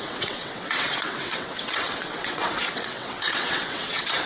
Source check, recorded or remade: remade